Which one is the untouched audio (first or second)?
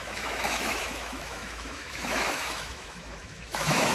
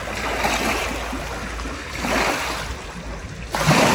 second